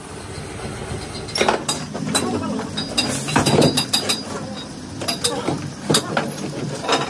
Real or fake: real